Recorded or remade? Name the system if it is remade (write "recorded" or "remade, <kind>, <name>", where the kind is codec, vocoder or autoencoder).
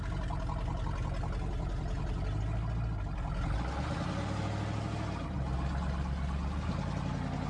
recorded